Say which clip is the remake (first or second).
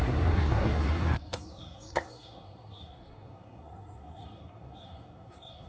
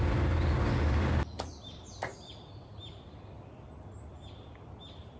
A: first